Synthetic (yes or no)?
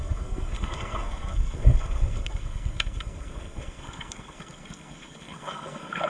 yes